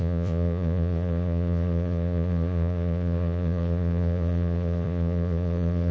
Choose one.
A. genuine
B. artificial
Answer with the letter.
B